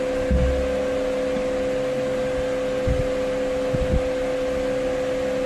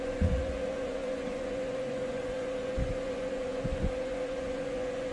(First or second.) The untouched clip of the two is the first